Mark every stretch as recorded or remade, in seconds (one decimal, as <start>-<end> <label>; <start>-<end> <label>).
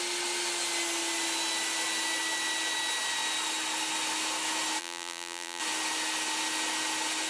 0.0-4.8 recorded; 4.8-5.6 remade; 5.6-7.3 recorded